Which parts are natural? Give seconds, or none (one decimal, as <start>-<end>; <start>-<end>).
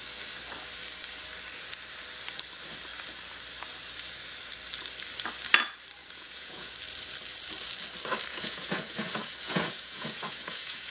0.0-6.0; 6.7-8.3